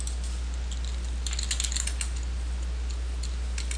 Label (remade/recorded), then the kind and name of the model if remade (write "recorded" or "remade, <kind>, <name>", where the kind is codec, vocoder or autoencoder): recorded